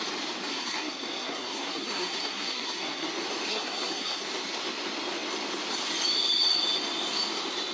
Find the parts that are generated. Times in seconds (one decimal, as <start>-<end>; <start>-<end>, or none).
0.5-3.1; 3.5-4.2